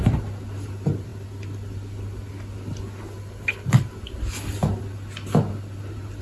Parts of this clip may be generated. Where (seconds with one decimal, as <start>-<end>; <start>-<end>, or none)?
none